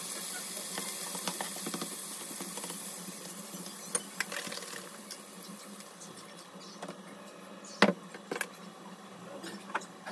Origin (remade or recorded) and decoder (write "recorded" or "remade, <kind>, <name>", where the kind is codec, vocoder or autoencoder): recorded